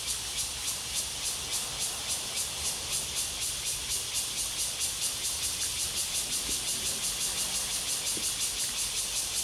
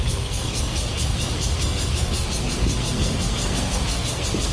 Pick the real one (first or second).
first